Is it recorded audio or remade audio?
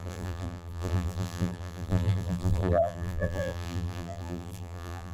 remade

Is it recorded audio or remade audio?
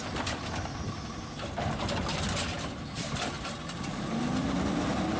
recorded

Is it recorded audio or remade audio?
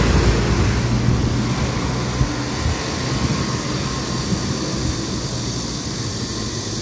recorded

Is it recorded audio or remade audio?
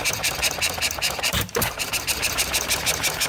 remade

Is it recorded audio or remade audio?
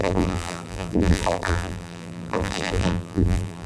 remade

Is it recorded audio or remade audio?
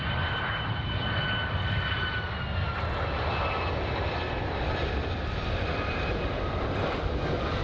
recorded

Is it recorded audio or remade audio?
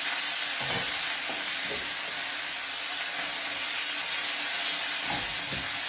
recorded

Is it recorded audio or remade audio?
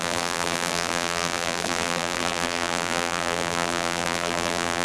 remade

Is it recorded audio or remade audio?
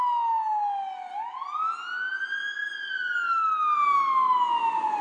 recorded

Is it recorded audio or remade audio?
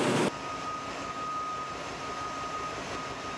recorded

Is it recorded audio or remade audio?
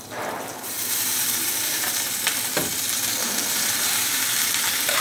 remade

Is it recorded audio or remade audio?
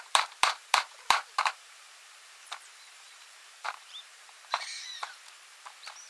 remade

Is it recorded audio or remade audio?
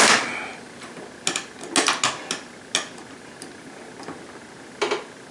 recorded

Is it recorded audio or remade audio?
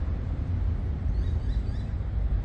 remade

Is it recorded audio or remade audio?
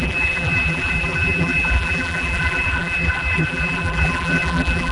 remade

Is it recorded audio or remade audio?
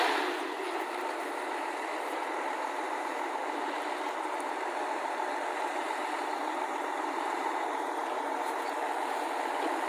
remade